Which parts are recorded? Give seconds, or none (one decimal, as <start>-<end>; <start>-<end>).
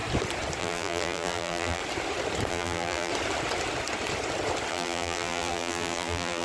0.0-0.6; 1.8-2.5; 3.1-4.7